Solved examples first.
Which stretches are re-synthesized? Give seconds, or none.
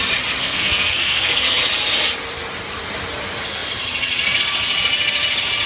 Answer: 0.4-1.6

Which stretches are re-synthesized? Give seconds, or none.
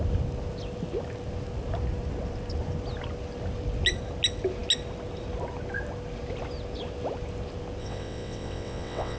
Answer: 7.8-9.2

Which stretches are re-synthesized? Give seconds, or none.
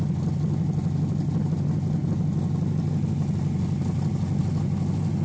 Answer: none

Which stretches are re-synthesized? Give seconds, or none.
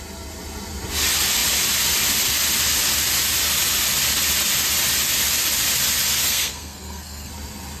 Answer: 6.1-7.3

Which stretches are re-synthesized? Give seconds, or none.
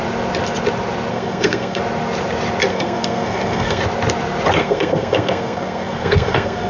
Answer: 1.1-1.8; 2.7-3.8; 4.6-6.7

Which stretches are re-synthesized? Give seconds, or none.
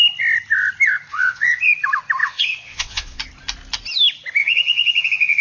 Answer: 1.1-1.6; 2.2-3.2; 4.4-5.4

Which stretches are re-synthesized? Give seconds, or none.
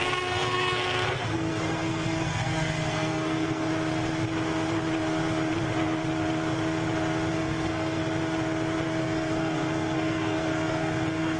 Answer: 0.0-3.7; 7.3-8.0; 9.0-11.4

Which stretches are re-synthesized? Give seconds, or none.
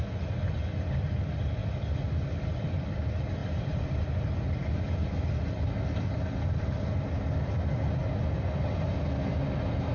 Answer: 1.6-2.9; 3.4-4.0